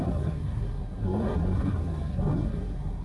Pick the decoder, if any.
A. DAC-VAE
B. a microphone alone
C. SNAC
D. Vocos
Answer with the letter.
C